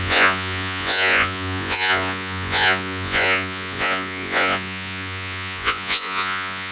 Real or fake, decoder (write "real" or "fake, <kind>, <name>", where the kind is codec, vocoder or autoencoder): fake, vocoder, Vocos